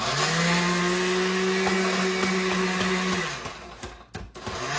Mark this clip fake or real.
real